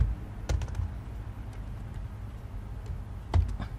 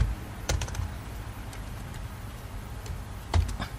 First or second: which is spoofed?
second